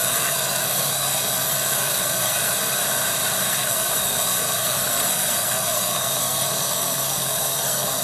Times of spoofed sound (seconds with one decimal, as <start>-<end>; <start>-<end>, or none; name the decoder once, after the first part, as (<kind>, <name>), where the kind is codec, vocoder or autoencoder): 0.0-2.8 (codec, SNAC); 3.4-8.0